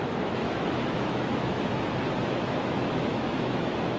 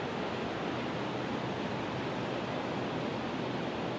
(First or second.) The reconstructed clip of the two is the first